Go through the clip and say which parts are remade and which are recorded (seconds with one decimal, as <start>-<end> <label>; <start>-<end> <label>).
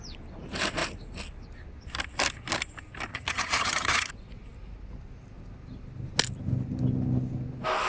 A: 0.0-3.1 recorded; 3.1-4.1 remade; 4.1-7.9 recorded